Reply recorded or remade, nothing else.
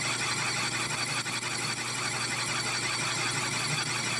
recorded